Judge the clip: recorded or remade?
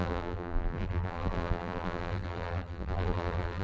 remade